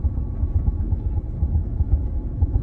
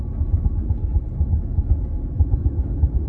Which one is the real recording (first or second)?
second